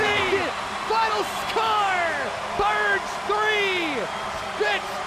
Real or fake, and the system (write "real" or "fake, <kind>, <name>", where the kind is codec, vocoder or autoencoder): real